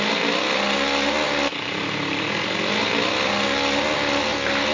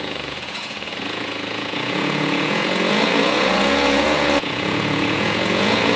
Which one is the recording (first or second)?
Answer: first